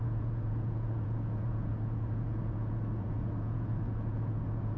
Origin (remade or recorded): remade